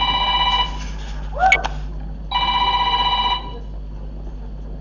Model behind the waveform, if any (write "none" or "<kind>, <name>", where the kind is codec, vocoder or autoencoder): none